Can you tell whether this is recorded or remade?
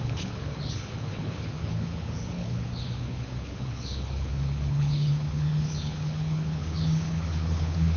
remade